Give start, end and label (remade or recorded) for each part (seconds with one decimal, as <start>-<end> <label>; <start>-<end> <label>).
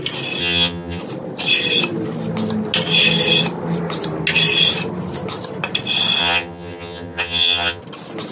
0.0-0.4 recorded; 0.4-1.0 remade; 1.0-6.2 recorded; 6.2-7.8 remade; 7.8-8.3 recorded